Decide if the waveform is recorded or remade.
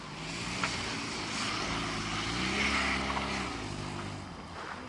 recorded